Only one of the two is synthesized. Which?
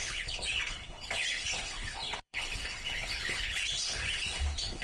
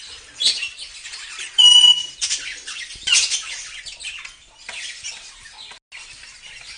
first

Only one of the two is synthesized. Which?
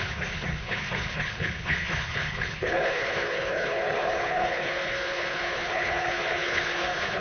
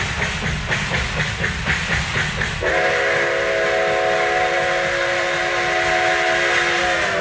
first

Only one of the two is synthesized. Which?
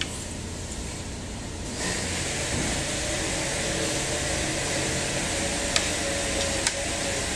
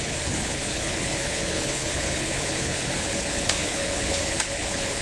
second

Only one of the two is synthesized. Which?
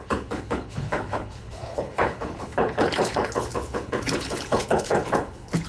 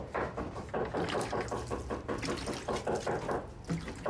first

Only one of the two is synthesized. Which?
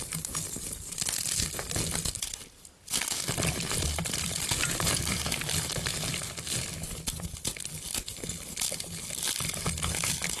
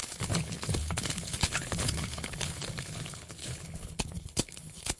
second